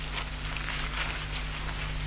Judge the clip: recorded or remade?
recorded